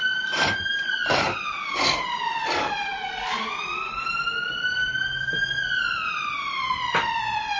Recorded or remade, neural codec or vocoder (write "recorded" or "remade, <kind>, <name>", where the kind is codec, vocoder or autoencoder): recorded